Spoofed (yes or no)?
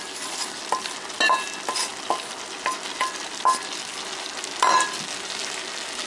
no